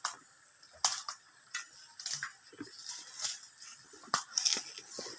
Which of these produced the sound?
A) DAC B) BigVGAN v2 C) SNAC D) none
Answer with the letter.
D